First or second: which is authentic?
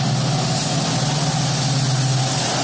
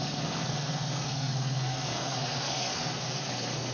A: first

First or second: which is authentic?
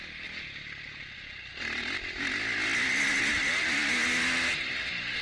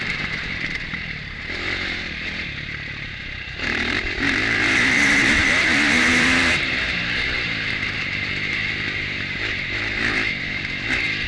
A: first